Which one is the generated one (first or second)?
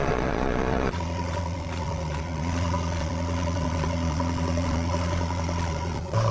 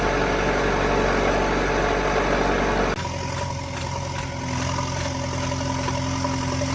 first